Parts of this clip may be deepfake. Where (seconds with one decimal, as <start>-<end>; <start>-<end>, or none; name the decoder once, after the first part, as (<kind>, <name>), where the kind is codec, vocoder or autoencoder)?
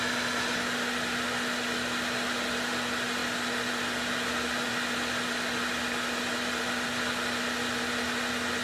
none